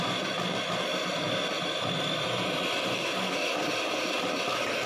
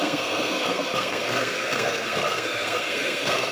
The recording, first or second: first